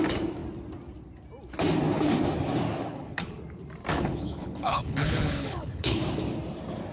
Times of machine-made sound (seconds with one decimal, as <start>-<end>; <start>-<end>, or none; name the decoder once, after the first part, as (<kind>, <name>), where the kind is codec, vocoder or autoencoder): 2.9-3.4 (codec, HILCodec); 3.9-6.0